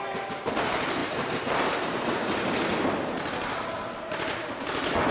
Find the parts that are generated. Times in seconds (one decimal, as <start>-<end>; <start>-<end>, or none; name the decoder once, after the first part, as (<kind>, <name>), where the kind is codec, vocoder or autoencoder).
none